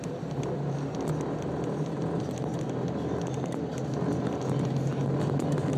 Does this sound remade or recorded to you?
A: recorded